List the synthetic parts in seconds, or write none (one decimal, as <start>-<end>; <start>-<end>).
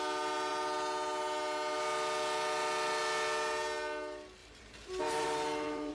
4.4-5.9